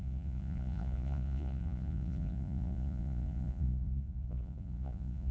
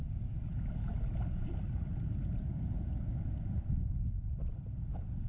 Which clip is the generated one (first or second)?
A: first